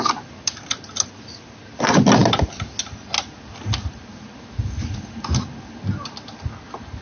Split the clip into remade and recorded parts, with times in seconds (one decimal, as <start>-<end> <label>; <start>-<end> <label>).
0.0-7.0 recorded